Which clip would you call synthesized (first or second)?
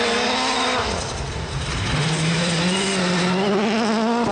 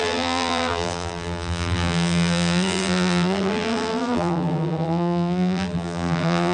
second